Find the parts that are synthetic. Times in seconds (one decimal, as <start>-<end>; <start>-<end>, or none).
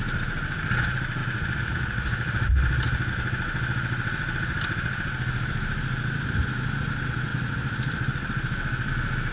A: none